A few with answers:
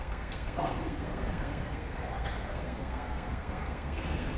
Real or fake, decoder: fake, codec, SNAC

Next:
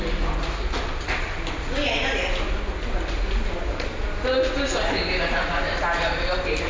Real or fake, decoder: real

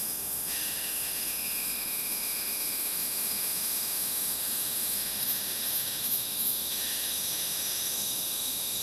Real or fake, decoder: fake, autoencoder, DAC-VAE